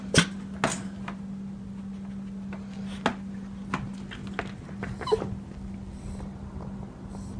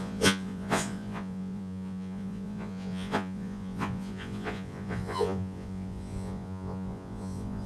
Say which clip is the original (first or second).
first